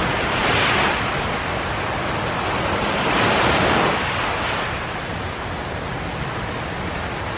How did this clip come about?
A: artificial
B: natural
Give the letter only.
B